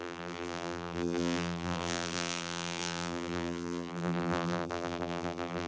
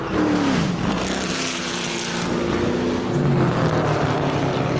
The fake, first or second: first